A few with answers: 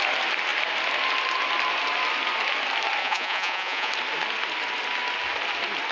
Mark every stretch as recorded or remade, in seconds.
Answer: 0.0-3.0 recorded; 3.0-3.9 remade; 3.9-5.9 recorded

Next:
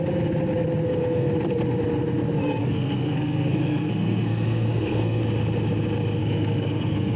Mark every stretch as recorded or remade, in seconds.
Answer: 0.0-0.8 recorded; 0.8-1.3 remade; 1.3-2.6 recorded; 2.6-5.2 remade; 5.2-6.2 recorded; 6.2-7.2 remade

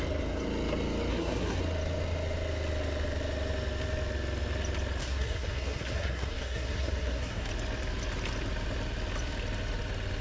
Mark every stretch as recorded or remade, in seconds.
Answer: 0.0-1.1 recorded; 1.1-1.6 remade; 1.6-5.0 recorded; 5.0-7.5 remade; 7.5-10.2 recorded

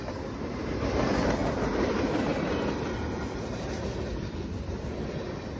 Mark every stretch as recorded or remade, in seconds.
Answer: 0.0-1.4 recorded; 1.4-1.9 remade; 1.9-2.3 recorded; 2.3-3.4 remade; 3.4-4.1 recorded; 4.1-4.7 remade; 4.7-5.6 recorded